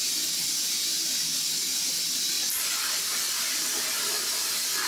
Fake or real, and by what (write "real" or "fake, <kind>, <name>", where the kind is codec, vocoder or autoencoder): real